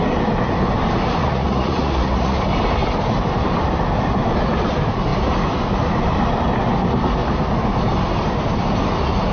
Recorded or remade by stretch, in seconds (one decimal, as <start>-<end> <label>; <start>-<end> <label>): 0.0-1.2 recorded; 1.2-2.4 remade; 2.4-9.3 recorded